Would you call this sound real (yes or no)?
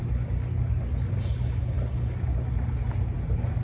yes